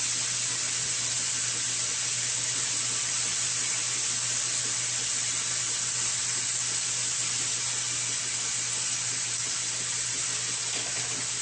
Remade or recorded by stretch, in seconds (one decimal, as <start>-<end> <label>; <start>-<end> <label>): 0.0-11.4 recorded